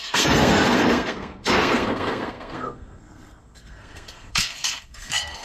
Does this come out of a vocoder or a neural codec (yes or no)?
yes